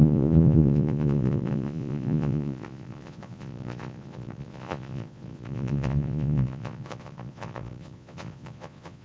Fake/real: fake